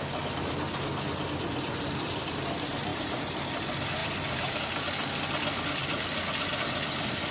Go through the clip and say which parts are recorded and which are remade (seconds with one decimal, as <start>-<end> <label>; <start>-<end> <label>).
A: 0.0-2.9 recorded; 2.9-3.4 remade; 3.4-4.0 recorded; 4.0-4.6 remade; 4.6-7.3 recorded